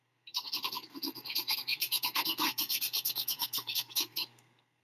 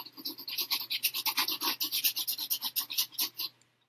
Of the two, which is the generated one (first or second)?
first